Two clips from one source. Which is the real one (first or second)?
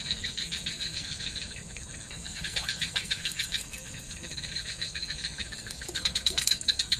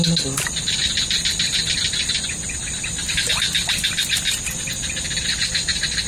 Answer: second